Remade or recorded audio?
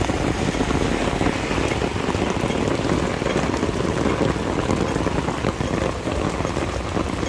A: recorded